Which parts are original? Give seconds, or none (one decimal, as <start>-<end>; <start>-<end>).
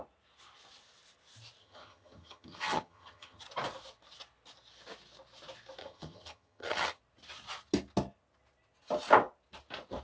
0.0-1.6; 3.4-5.8; 7.0-10.0